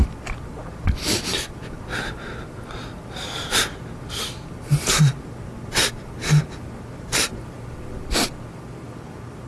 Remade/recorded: recorded